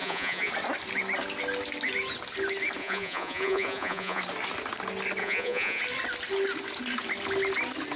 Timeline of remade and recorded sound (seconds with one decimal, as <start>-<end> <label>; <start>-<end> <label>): 0.0-0.5 remade; 0.5-2.8 recorded; 2.8-4.2 remade; 4.2-5.2 recorded; 5.2-5.8 remade; 5.8-8.0 recorded